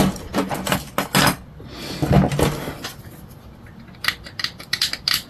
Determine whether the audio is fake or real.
real